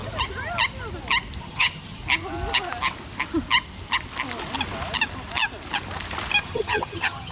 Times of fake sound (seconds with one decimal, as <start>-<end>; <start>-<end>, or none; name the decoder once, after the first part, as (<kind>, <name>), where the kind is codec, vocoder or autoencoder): 1.4-2.0 (vocoder, HiFi-GAN); 6.4-7.3